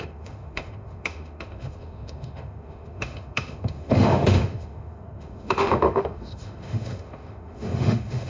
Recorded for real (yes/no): no